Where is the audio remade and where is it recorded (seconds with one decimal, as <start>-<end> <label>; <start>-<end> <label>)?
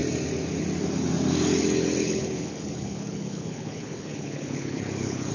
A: 0.0-2.0 recorded; 2.0-5.3 remade